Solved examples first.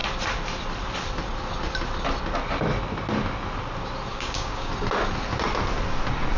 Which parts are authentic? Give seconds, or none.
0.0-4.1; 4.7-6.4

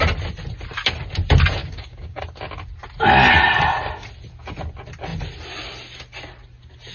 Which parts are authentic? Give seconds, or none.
0.0-1.6; 2.2-6.9

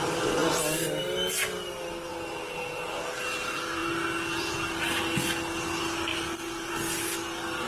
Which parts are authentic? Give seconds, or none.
0.0-7.7

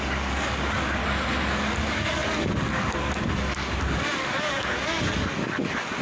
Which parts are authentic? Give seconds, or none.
1.0-1.5

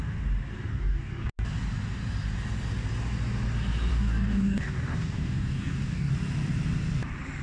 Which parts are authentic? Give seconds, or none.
0.0-0.7; 1.3-3.9; 6.1-7.4

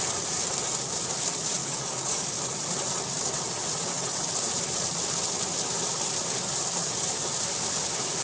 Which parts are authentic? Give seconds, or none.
0.0-1.6; 2.4-8.2

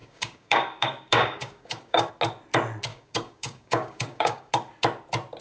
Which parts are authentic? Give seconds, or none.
2.1-2.9; 4.5-5.4

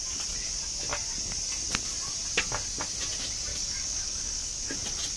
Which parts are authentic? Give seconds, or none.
0.0-3.5; 4.7-5.2